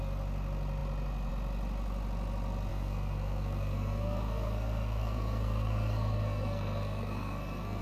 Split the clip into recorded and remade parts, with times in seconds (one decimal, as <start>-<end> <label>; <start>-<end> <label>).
0.0-2.7 recorded; 2.7-7.8 remade